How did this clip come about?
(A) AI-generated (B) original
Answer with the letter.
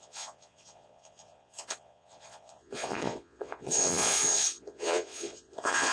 A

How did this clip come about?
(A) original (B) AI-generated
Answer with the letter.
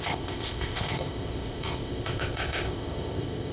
B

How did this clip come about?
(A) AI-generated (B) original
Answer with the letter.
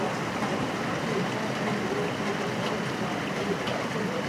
B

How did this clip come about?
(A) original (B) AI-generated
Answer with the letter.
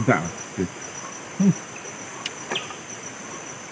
A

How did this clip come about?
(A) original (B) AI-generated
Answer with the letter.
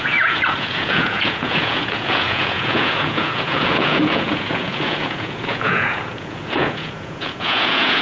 B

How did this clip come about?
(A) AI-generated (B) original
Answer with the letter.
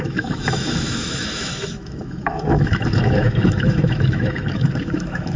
A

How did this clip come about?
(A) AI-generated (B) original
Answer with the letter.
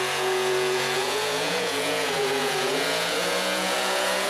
A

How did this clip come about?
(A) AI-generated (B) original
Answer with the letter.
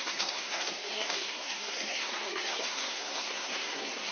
A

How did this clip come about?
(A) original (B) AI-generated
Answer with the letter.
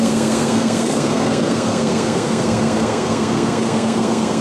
B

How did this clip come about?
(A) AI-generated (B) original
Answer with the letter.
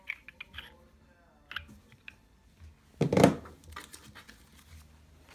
B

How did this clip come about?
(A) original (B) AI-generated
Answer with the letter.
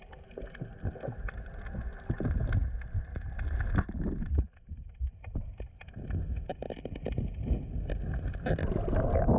A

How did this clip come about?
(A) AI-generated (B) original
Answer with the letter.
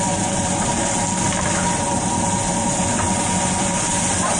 B